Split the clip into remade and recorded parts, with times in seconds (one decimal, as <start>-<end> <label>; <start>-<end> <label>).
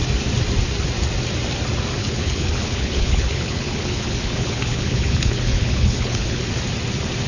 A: 0.0-2.0 recorded; 2.0-6.4 remade; 6.4-7.3 recorded